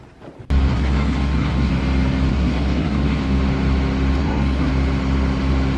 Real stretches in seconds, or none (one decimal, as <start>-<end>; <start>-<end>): 0.0-0.7; 1.7-2.3; 3.2-4.2; 4.7-5.8